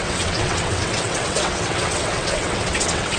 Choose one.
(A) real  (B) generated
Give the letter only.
B